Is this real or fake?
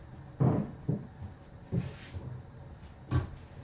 real